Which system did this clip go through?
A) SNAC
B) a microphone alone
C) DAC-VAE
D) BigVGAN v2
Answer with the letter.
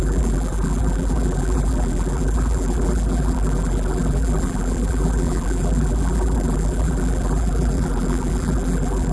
D